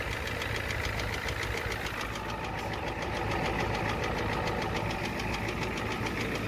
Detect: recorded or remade recorded